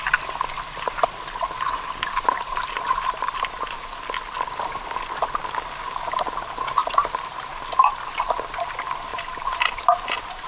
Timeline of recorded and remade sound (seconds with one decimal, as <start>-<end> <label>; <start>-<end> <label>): 0.0-6.8 recorded; 6.8-8.2 remade; 8.2-9.1 recorded; 9.1-9.8 remade; 9.8-10.5 recorded